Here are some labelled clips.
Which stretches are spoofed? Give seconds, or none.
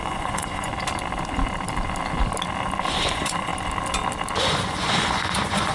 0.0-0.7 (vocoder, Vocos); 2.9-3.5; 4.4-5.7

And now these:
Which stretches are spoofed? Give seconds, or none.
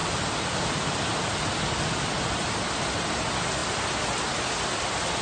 none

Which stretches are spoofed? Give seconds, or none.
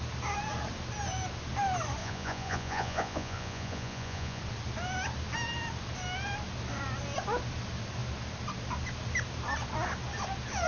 2.0-4.4 (vocoder, Vocos)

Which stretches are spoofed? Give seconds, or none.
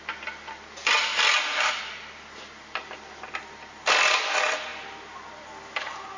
none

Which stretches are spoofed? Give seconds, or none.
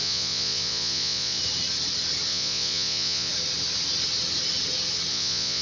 0.0-1.4 (vocoder, Vocos); 2.3-3.3; 5.1-5.6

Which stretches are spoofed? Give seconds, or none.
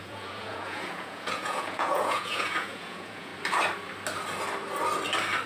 0.0-3.3 (vocoder, Vocos)